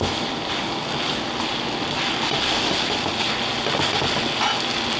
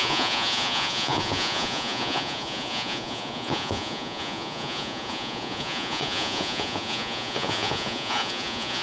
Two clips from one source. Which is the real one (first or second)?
first